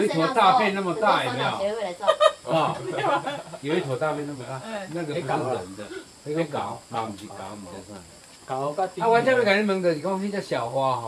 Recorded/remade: remade